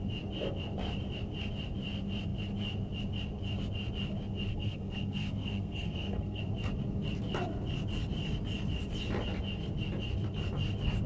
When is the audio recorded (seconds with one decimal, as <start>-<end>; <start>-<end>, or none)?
0.0-4.5; 6.4-11.1